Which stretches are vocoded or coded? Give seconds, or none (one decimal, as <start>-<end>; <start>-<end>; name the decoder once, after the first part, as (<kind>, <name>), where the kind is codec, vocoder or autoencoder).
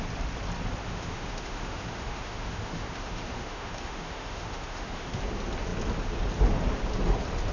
0.8-5.2 (autoencoder, DAC-VAE)